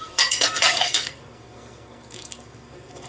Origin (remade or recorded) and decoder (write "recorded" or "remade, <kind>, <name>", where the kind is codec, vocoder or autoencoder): remade, codec, SNAC